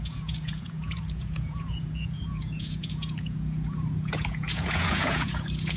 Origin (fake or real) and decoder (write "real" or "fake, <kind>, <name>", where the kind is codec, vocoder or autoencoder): fake, vocoder, Vocos